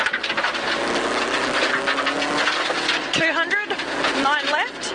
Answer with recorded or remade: recorded